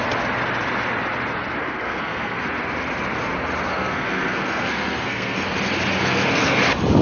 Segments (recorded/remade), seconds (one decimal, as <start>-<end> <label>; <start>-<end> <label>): 0.0-1.6 recorded; 1.6-2.4 remade; 2.4-3.7 recorded; 3.7-5.6 remade; 5.6-6.0 recorded; 6.0-6.6 remade; 6.6-7.0 recorded